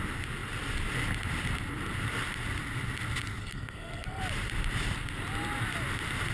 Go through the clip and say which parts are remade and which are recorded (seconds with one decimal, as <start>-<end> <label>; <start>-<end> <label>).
0.0-3.4 recorded; 3.4-4.2 remade; 4.2-6.3 recorded